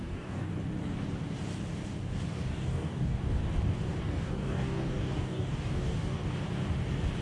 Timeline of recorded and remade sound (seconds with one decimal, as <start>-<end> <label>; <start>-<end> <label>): 0.0-0.5 remade; 0.5-2.3 recorded; 2.3-3.4 remade; 3.4-4.0 recorded; 4.0-6.2 remade; 6.2-7.2 recorded